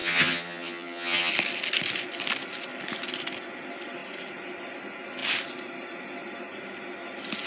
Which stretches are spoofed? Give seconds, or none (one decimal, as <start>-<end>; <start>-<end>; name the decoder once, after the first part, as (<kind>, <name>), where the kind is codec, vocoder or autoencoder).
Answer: 0.0-1.3 (vocoder, HiFi-GAN)